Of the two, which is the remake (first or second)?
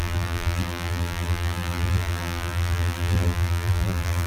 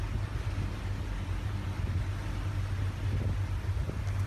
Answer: first